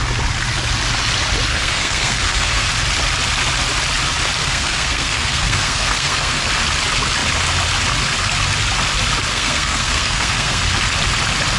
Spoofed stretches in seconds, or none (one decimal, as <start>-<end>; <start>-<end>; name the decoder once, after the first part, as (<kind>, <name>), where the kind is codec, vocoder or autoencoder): 1.5-2.7 (codec, SNAC); 4.4-6.4; 9.3-10.6